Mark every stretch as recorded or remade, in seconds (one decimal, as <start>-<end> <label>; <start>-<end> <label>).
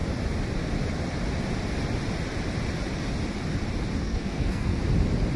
0.0-4.0 recorded; 4.0-4.8 remade; 4.8-5.4 recorded